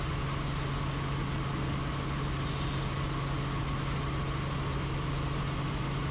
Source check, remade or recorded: recorded